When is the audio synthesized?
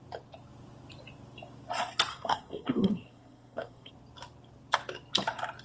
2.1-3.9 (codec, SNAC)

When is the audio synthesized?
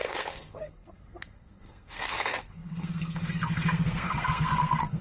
0.0-5.0 (codec, SNAC)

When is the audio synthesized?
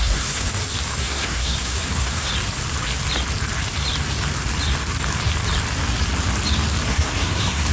0.0-0.5 (codec, SNAC); 1.0-2.3; 6.9-7.7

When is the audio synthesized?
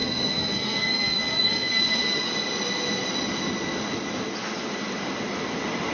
0.0-2.3 (codec, SNAC)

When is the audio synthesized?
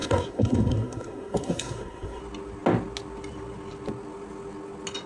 0.0-2.2 (codec, SNAC)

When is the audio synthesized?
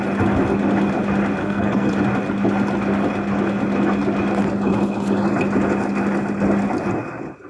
1.4-1.9 (codec, SNAC)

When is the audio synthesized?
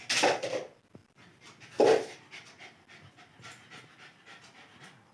none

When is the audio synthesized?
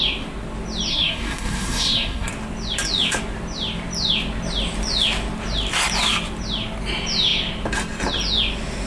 0.9-2.3 (codec, SNAC)